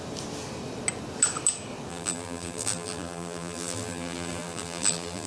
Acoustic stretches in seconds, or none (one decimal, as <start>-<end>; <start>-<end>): 0.0-1.9